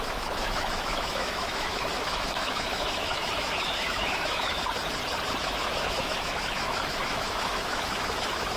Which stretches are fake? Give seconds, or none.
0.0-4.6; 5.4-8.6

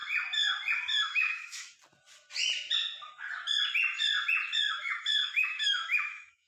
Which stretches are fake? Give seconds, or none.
1.0-1.7; 4.7-6.5

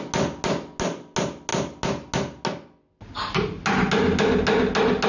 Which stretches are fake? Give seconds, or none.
none

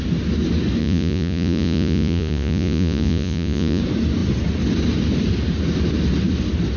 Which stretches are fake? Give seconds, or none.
0.8-3.8

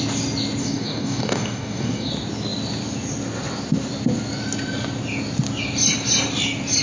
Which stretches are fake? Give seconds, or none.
0.6-2.1

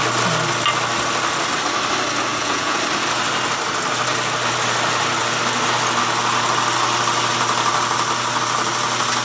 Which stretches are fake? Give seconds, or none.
2.3-2.8